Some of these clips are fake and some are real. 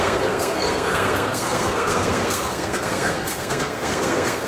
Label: fake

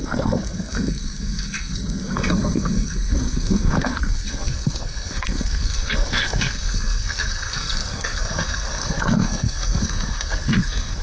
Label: fake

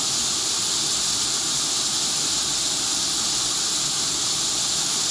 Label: real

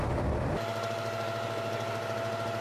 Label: real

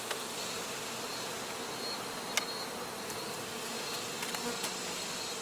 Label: real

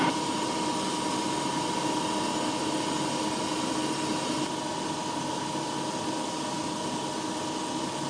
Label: real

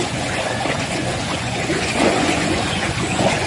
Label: fake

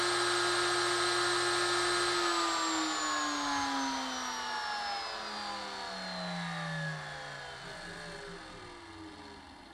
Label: real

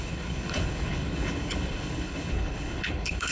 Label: fake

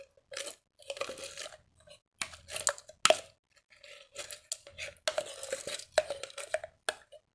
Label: real